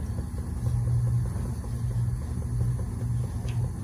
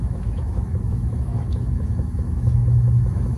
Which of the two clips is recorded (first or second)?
first